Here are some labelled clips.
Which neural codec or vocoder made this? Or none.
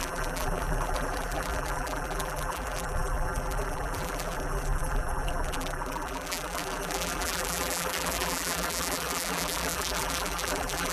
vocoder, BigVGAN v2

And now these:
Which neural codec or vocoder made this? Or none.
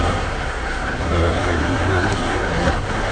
codec, SNAC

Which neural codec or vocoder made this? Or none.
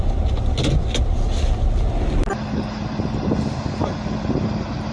none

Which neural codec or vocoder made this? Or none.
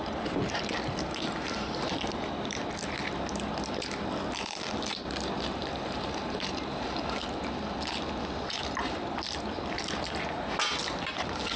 none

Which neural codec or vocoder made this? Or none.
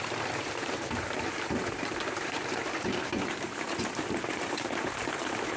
vocoder, BigVGAN v2